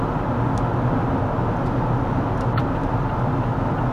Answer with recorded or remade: recorded